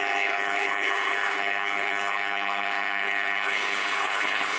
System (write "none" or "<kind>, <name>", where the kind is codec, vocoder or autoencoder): codec, HILCodec